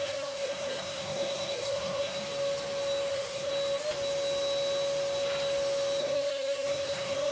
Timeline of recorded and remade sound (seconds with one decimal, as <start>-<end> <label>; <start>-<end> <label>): 0.0-2.2 remade; 2.2-3.1 recorded; 3.1-3.5 remade; 3.5-6.0 recorded; 6.0-7.3 remade